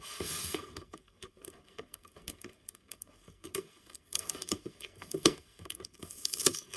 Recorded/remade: remade